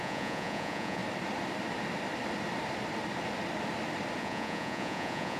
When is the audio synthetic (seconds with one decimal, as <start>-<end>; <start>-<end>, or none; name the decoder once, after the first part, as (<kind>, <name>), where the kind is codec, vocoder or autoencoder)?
0.0-1.0 (vocoder, Vocos); 4.2-5.4